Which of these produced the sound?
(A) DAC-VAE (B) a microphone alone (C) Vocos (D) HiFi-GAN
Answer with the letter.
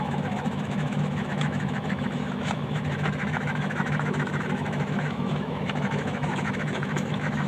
A